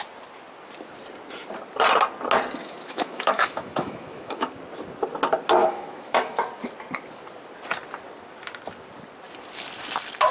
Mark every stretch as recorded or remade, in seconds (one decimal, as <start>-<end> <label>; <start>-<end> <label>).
0.0-2.6 recorded; 2.6-4.5 remade; 4.5-5.6 recorded; 5.6-6.4 remade; 6.4-10.3 recorded